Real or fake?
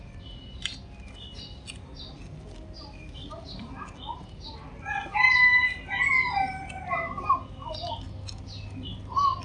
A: real